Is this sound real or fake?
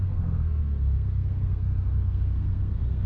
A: fake